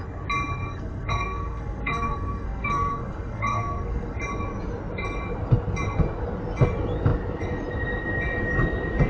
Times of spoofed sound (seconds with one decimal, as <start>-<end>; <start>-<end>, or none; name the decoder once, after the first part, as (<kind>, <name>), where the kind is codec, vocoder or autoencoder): 0.6-4.2 (codec, SNAC)